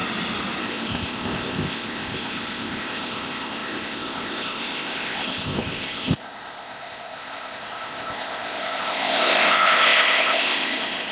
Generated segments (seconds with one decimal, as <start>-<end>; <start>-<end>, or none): 0.6-11.1